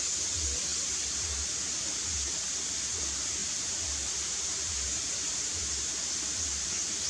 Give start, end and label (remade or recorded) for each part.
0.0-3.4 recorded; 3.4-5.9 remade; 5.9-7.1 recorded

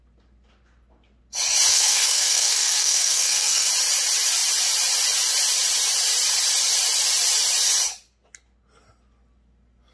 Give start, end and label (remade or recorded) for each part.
0.0-1.7 recorded; 1.7-3.7 remade; 3.7-9.9 recorded

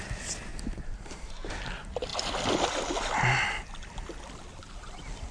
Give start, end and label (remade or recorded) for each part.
0.0-0.5 recorded; 0.5-1.5 remade; 1.5-5.3 recorded

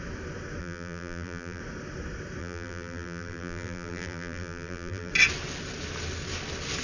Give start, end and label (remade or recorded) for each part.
0.0-0.6 recorded; 0.6-1.6 remade; 1.6-2.4 recorded; 2.4-5.1 remade; 5.1-6.8 recorded

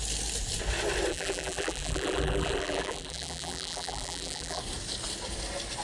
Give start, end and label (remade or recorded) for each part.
0.0-1.1 recorded; 1.1-4.6 remade; 4.6-5.8 recorded

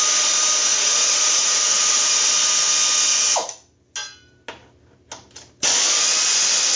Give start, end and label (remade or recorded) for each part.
0.0-0.7 recorded; 0.7-2.3 remade; 2.3-6.8 recorded

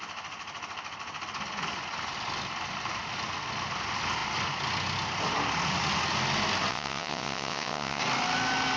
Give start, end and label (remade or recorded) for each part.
0.0-6.7 recorded; 6.7-8.0 remade; 8.0-8.8 recorded